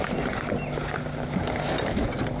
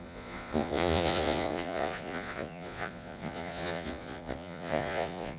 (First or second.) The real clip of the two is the first